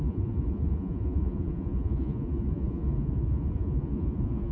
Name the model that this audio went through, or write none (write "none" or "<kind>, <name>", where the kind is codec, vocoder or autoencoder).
vocoder, Vocos